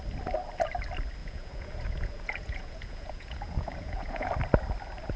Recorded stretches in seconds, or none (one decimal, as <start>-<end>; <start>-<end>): 0.0-1.2; 4.3-5.2